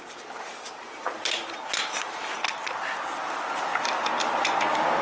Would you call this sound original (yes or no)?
yes